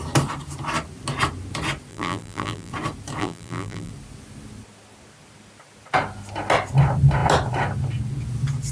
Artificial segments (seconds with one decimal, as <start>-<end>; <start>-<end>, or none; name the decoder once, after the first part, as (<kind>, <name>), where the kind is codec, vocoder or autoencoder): 1.9-2.7 (vocoder, BigVGAN v2); 3.2-3.9